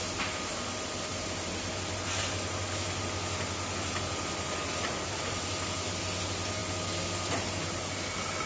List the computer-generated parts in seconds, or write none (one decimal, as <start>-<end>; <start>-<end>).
1.1-1.7